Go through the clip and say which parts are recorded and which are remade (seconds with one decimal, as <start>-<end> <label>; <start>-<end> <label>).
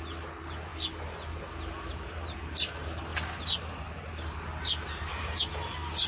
0.0-6.1 recorded